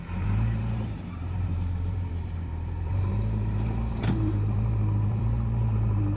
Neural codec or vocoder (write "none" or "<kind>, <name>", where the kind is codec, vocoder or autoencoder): vocoder, BigVGAN v2